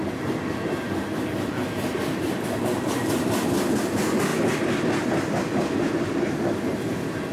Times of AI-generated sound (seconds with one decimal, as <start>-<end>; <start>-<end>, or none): none